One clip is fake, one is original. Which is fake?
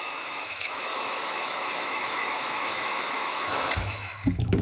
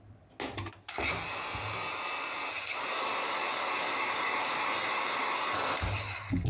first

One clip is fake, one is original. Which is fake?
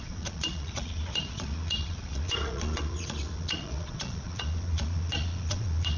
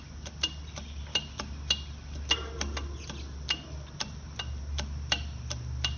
first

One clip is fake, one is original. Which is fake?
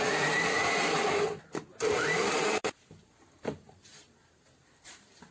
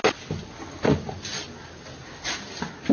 first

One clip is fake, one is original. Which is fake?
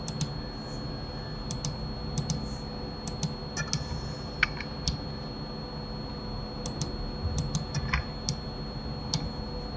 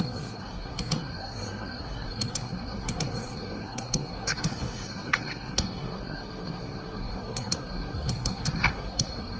second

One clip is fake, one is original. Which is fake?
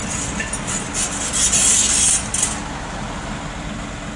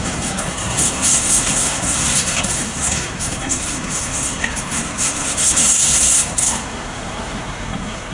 second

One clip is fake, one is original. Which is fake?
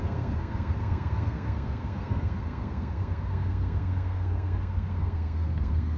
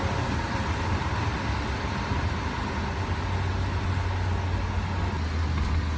first